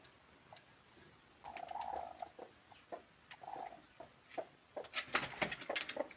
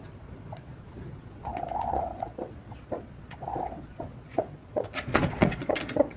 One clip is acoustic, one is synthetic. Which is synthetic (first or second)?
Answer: second